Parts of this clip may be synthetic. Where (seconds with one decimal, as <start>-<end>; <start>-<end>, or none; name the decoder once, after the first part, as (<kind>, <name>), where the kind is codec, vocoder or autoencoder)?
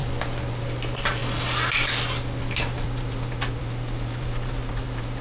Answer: none